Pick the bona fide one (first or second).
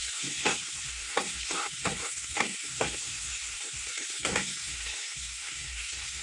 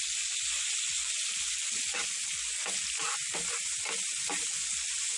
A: second